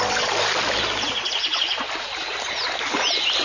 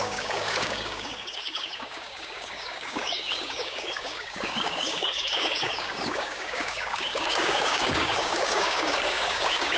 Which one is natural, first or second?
first